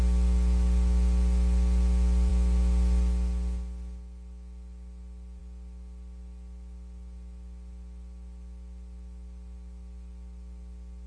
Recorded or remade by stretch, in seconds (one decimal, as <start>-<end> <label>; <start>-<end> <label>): 0.0-11.1 recorded